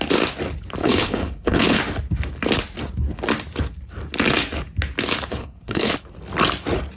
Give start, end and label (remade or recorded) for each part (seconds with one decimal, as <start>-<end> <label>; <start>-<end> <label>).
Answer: 0.0-0.8 recorded; 0.8-1.8 remade; 1.8-5.3 recorded; 5.3-5.9 remade; 5.9-7.0 recorded